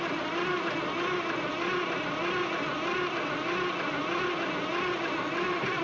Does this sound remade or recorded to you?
recorded